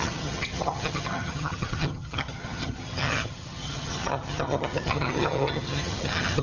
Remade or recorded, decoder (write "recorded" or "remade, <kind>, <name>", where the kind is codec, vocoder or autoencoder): remade, vocoder, HiFi-GAN